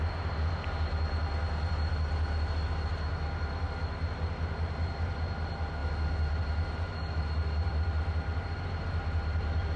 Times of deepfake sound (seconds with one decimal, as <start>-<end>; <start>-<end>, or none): none